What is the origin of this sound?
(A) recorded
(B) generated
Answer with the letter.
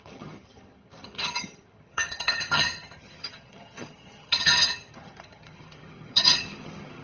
B